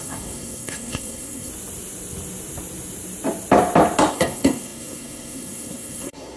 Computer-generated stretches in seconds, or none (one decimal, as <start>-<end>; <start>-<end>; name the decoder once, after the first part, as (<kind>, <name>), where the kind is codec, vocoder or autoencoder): 0.0-1.5 (codec, SNAC); 4.1-6.4